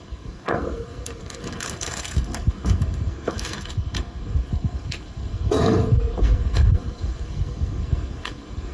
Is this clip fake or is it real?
fake